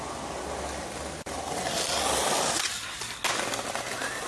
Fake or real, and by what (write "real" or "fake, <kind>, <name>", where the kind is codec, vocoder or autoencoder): real